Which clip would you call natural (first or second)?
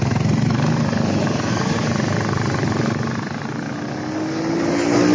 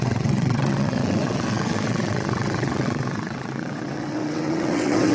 first